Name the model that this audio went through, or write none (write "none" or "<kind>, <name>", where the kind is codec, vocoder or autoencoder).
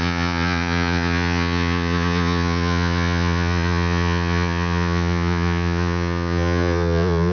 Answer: vocoder, Vocos